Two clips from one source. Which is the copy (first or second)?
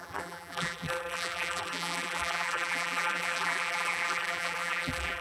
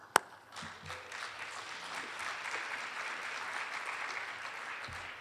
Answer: first